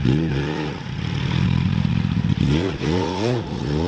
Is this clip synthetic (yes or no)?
yes